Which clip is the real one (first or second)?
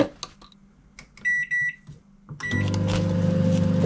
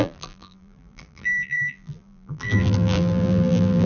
first